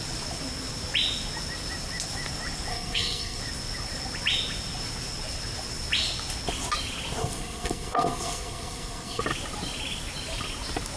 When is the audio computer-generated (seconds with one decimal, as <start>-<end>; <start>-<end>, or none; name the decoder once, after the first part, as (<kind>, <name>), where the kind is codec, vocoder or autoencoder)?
2.7-3.4 (codec, SNAC); 7.2-9.2